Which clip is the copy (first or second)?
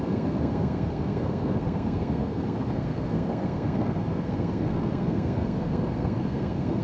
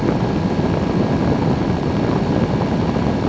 first